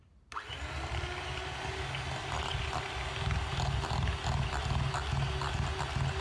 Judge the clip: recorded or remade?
recorded